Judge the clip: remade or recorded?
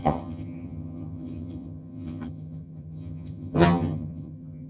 remade